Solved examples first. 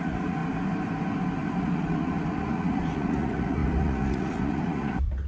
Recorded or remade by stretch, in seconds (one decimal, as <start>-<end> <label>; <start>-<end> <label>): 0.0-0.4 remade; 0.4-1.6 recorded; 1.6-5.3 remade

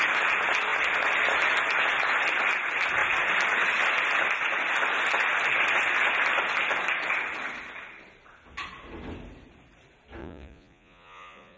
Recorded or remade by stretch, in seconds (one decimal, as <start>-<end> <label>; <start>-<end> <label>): 0.0-10.2 recorded; 10.2-11.6 remade

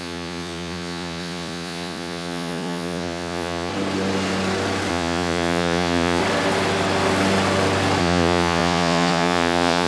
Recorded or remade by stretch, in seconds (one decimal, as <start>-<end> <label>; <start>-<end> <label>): 0.0-3.7 remade; 3.7-4.9 recorded; 4.9-6.2 remade; 6.2-8.0 recorded; 8.0-9.9 remade

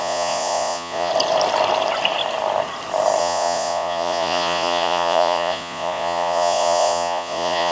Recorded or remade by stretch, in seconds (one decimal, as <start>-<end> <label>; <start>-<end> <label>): 0.0-1.1 remade; 1.1-3.2 recorded; 3.2-7.7 remade

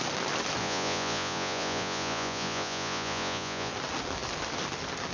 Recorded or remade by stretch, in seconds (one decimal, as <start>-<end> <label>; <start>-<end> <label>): 0.0-0.6 recorded; 0.6-3.7 remade; 3.7-5.1 recorded

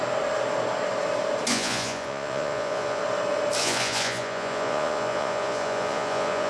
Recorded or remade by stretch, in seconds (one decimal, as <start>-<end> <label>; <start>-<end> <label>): 0.0-1.5 recorded; 1.5-3.0 remade; 3.0-3.6 recorded; 3.6-6.5 remade